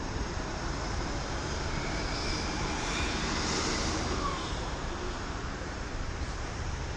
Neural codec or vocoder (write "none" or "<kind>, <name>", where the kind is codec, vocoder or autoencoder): vocoder, BigVGAN v2